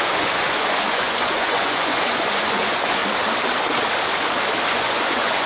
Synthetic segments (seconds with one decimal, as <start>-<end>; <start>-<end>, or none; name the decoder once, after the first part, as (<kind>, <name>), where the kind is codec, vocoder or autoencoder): 0.0-3.0 (vocoder, Vocos); 4.7-5.5